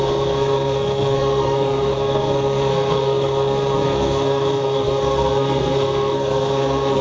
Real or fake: fake